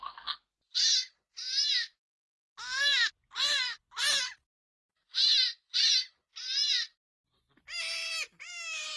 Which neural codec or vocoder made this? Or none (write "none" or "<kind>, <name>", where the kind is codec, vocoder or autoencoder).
none